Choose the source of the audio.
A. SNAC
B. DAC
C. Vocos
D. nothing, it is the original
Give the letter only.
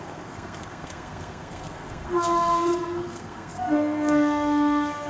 A